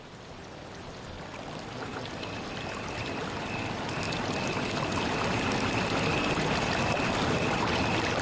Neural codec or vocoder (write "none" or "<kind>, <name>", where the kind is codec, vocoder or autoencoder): none